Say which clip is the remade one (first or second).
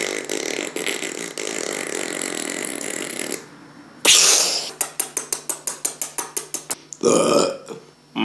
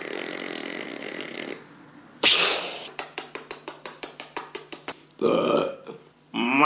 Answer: second